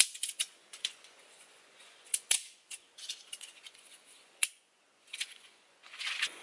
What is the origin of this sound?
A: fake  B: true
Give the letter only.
A